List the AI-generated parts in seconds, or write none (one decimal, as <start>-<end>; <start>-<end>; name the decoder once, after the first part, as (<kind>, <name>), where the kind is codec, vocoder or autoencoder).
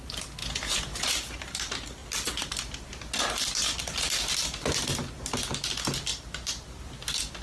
0.4-1.1 (vocoder, Vocos)